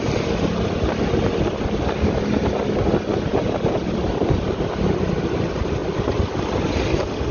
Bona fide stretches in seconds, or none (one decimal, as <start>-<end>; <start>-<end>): 0.0-7.3